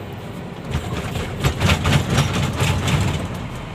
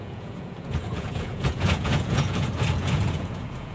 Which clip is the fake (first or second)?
second